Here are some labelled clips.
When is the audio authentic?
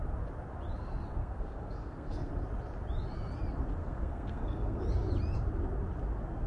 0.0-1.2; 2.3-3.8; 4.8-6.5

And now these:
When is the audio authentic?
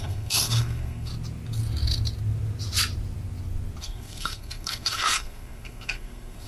1.1-3.8